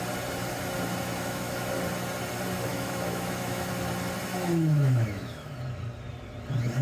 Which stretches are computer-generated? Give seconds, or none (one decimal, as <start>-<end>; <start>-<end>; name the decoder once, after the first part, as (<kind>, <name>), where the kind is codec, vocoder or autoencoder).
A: 1.1-1.7 (autoencoder, DAC-VAE); 2.7-3.7; 4.3-5.5